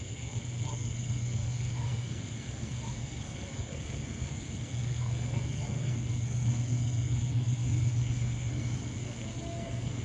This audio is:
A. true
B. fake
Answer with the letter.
B